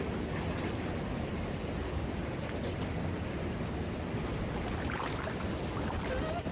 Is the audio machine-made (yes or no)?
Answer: no